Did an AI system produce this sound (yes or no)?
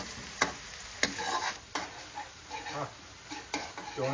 no